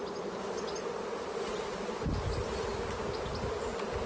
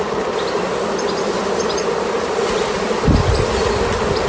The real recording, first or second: first